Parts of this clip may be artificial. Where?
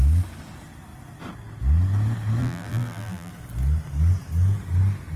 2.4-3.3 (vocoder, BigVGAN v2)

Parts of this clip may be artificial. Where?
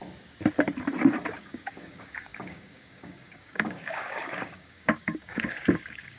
1.4-6.2 (codec, DAC)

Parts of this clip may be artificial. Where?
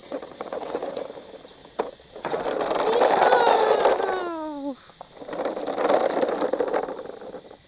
0.0-1.0 (vocoder, WaveNeXt); 1.6-2.4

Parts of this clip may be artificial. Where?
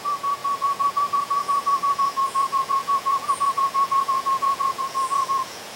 0.0-5.8 (vocoder, Vocos)